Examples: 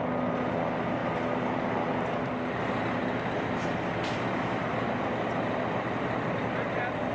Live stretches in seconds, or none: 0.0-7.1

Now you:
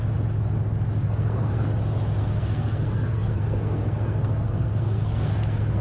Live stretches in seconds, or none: 0.0-1.0; 1.7-2.2

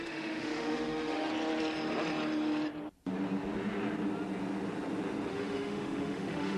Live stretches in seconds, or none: 1.3-5.3

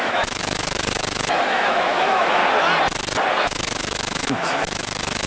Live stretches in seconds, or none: 2.4-3.4

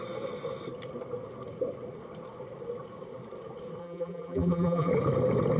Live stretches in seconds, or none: 0.0-3.8; 4.9-5.6